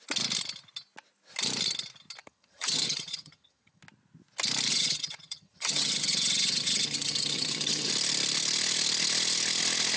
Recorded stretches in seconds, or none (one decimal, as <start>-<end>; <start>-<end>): 0.0-2.2; 3.8-4.7; 7.9-10.0